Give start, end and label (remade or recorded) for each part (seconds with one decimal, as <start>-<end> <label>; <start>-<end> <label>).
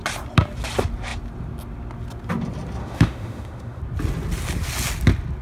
0.0-2.8 recorded; 2.8-3.8 remade; 3.8-5.4 recorded